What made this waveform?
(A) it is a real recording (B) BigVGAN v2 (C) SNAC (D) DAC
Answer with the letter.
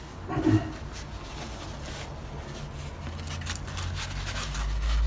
A